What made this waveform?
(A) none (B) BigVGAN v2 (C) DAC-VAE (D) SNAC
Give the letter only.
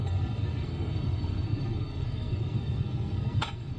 D